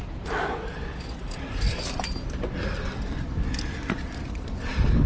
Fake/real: real